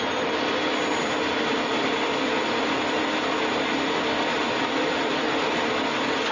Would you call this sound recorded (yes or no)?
yes